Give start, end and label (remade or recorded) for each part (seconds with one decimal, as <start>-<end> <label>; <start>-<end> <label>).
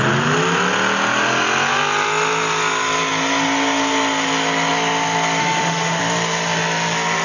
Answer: 0.0-5.4 recorded; 5.4-6.0 remade; 6.0-7.2 recorded